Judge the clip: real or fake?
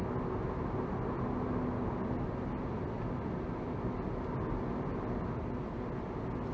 real